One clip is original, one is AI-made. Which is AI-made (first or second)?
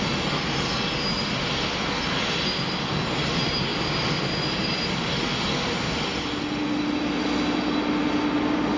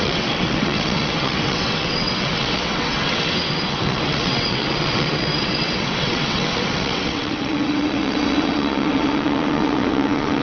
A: second